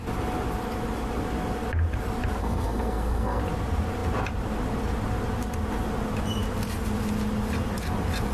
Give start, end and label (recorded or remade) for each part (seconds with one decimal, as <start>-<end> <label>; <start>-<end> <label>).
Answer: 0.0-2.4 recorded; 2.4-3.4 remade; 3.4-8.3 recorded